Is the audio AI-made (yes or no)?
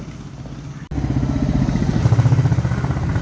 no